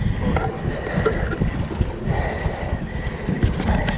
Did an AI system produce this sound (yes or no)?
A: no